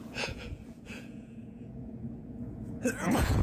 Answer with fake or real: fake